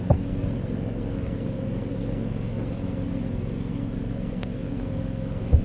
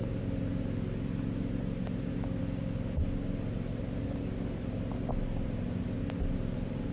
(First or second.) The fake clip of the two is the first